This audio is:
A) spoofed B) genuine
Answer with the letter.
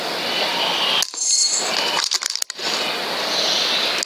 B